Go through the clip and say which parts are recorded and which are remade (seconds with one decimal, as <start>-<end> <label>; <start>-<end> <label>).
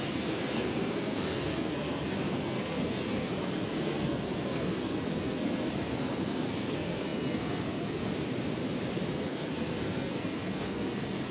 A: 0.0-8.1 remade; 8.1-9.1 recorded; 9.1-11.3 remade